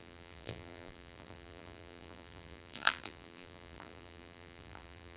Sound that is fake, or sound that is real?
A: fake